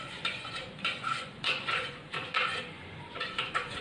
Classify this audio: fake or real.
fake